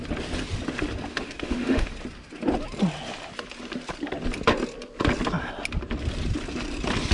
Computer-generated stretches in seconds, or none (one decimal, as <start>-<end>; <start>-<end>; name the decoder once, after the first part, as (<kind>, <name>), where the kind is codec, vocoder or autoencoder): 1.1-1.9 (autoencoder, DAC-VAE)